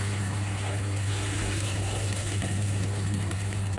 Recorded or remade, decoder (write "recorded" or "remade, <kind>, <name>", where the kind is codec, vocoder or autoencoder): remade, codec, SNAC